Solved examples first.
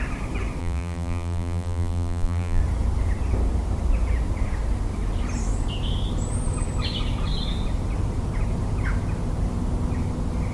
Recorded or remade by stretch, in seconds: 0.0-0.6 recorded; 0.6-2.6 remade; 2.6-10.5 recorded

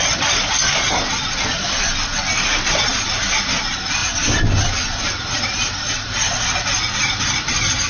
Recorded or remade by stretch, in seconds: 0.0-2.9 remade; 2.9-3.6 recorded; 3.6-7.9 remade